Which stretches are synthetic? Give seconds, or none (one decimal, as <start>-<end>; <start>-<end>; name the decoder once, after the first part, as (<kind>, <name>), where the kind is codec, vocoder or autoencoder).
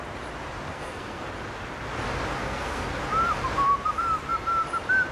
0.7-1.3 (codec, SNAC); 2.4-3.0